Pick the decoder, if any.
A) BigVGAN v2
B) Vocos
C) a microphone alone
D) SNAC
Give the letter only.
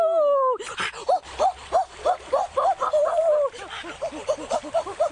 C